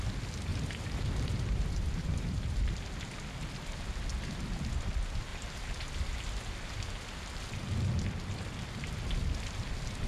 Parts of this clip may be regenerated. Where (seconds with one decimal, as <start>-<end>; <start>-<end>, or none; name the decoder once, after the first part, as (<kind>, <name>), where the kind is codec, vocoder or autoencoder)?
0.5-2.8 (vocoder, BigVGAN v2); 5.3-5.9